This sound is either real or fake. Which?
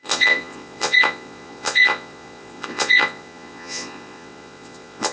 fake